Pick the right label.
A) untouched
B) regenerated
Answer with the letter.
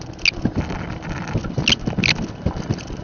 A